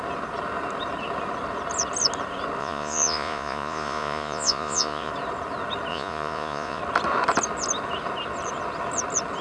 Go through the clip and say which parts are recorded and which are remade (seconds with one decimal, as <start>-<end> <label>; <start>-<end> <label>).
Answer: 0.0-2.6 recorded; 2.6-5.1 remade; 5.1-5.9 recorded; 5.9-6.8 remade; 6.8-9.4 recorded